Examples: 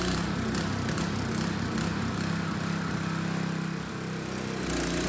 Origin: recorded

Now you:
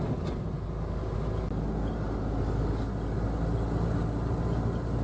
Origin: recorded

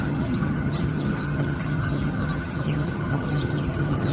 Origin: remade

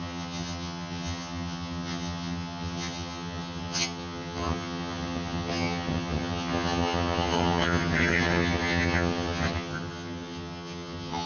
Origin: remade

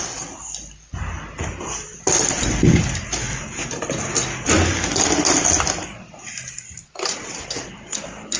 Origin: recorded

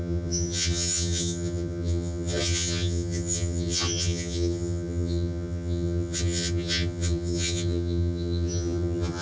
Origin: remade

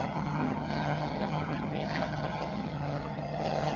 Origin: remade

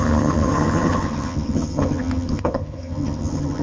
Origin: remade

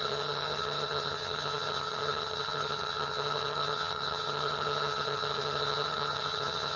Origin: remade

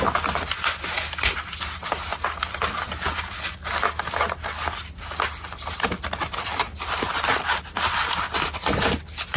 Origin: recorded